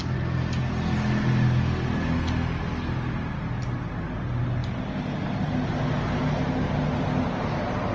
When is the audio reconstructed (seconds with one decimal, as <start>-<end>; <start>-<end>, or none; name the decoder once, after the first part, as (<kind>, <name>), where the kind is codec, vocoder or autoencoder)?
none